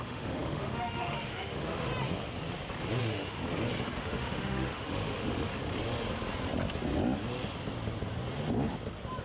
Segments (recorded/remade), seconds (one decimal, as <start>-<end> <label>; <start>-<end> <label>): 0.0-1.9 remade; 1.9-3.0 recorded; 3.0-3.4 remade; 3.4-4.0 recorded; 4.0-5.5 remade; 5.5-9.2 recorded